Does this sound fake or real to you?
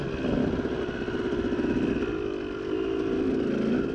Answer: real